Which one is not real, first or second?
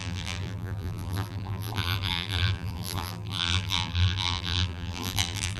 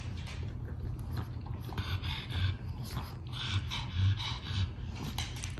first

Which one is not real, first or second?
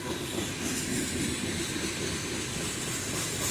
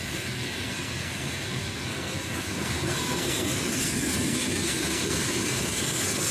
second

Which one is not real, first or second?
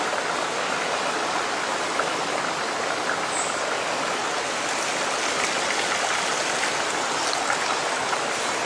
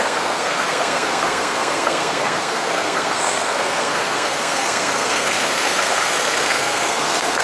second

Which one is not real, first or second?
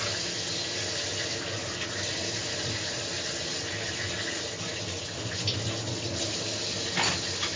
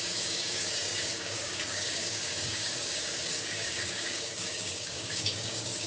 second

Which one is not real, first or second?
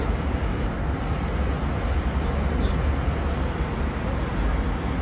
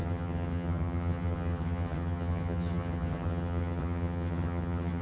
second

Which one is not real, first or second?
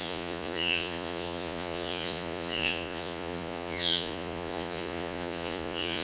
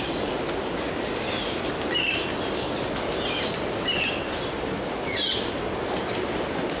first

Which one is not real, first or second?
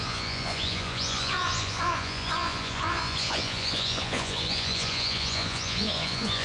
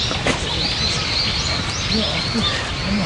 first